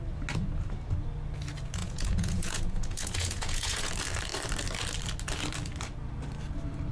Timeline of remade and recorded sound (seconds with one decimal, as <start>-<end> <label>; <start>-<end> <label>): 0.0-1.8 recorded; 1.8-3.9 remade; 3.9-6.9 recorded